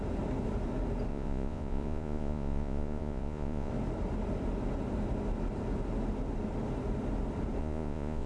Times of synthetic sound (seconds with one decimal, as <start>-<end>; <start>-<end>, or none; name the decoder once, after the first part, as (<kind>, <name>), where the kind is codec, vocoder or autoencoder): 1.1-3.7 (vocoder, Vocos); 7.6-8.3